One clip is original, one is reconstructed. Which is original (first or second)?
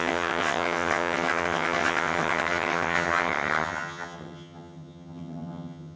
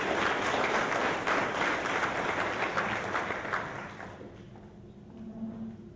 second